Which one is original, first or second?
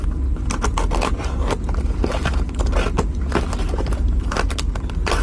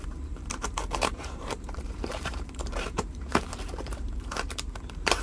first